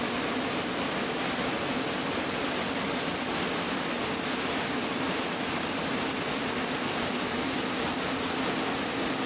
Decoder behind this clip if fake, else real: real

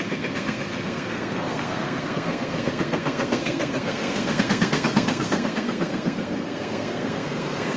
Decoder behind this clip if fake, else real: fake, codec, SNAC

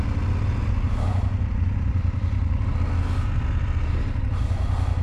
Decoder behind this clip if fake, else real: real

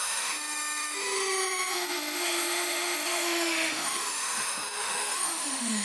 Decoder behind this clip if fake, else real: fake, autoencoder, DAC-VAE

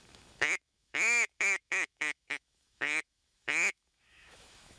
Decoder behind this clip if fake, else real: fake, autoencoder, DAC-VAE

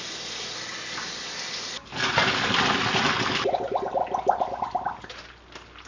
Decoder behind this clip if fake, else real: real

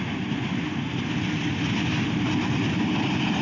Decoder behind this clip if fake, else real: real